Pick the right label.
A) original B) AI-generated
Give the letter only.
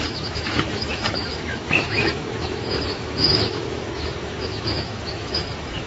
B